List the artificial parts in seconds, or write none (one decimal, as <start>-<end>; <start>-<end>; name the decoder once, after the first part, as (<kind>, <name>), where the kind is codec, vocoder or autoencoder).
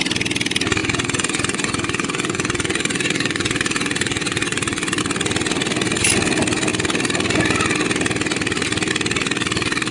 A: 0.8-5.0 (vocoder, Vocos)